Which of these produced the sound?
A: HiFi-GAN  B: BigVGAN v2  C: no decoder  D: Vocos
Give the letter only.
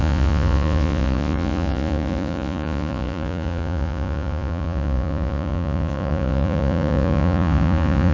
D